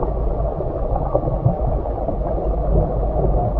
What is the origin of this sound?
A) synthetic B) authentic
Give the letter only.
B